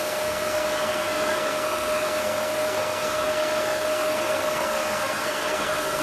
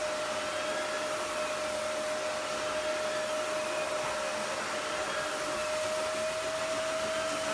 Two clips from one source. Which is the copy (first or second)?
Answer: first